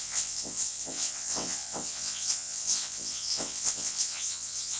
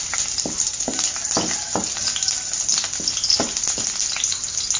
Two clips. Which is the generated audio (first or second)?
first